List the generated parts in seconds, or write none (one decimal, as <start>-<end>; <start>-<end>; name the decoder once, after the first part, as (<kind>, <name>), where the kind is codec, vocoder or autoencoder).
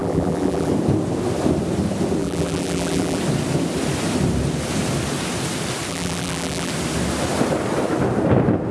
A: 0.0-0.7 (vocoder, BigVGAN v2); 2.2-3.2; 5.9-6.7